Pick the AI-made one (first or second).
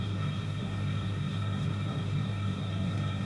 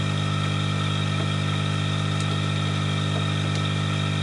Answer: first